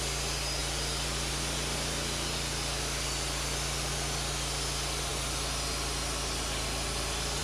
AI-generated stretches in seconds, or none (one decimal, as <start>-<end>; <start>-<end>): 0.6-1.3